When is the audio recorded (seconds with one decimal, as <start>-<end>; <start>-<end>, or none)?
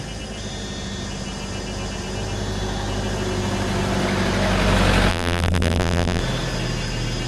0.0-5.1; 6.2-7.3